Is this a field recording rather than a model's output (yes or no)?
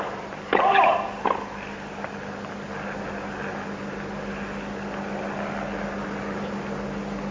yes